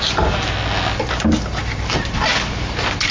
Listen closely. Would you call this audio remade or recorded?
recorded